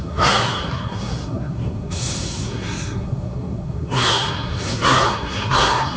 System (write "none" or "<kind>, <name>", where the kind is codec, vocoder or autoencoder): codec, SNAC